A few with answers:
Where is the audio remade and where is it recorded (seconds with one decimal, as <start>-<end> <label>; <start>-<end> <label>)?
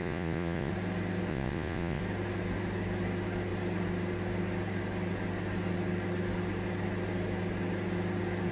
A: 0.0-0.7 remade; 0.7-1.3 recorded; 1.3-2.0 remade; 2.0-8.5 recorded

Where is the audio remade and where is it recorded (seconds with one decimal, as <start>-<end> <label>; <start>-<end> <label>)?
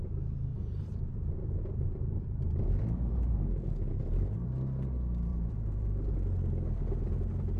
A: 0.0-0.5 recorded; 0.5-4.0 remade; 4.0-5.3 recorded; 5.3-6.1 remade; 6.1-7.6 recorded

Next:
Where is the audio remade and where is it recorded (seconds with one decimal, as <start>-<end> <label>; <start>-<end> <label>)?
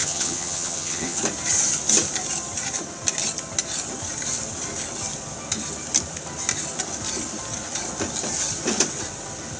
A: 0.0-1.2 remade; 1.2-9.6 recorded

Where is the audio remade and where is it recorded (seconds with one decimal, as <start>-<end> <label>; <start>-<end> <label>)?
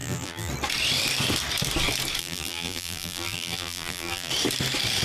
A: 0.0-0.5 remade; 0.5-2.2 recorded; 2.2-4.3 remade; 4.3-5.0 recorded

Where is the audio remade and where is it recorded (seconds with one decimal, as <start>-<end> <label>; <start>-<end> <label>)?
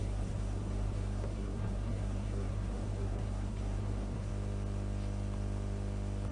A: 0.0-4.3 remade; 4.3-6.3 recorded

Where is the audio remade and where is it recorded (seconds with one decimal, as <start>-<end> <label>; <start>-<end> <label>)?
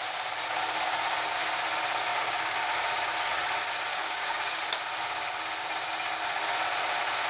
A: 0.0-2.1 recorded; 2.1-2.8 remade; 2.8-3.9 recorded; 3.9-4.6 remade; 4.6-7.3 recorded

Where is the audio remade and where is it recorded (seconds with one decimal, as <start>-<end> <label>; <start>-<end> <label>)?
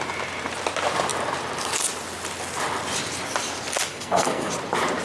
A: 0.0-3.9 recorded; 3.9-4.5 remade; 4.5-5.0 recorded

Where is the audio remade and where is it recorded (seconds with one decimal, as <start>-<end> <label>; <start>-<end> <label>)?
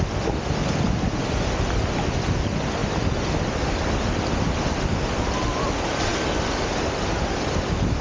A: 0.0-8.0 recorded